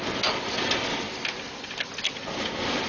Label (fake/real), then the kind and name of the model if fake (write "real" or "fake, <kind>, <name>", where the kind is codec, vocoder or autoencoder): real